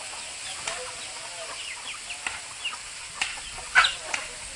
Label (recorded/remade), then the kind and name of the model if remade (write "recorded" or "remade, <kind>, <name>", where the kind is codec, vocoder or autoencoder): recorded